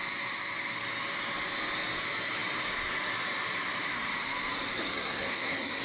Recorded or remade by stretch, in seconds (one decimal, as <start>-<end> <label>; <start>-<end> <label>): 0.0-4.9 recorded; 4.9-5.8 remade